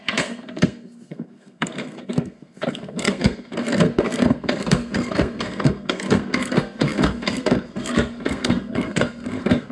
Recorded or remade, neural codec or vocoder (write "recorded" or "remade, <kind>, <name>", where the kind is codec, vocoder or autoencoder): remade, codec, SNAC